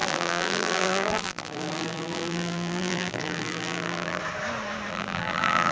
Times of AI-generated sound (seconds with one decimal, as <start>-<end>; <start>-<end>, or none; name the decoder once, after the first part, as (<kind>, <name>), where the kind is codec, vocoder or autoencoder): 0.0-4.2 (vocoder, BigVGAN v2); 4.9-5.7